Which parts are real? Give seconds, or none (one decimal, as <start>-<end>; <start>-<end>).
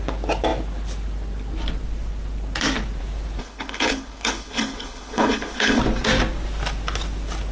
0.0-3.4; 5.8-7.5